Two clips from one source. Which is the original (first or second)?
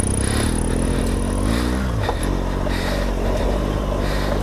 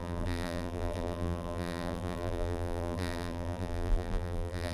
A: first